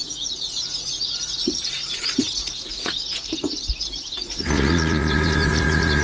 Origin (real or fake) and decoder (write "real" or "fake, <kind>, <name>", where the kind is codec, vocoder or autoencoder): fake, vocoder, Vocos